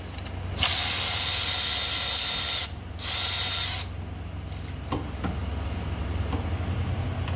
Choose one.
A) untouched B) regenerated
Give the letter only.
A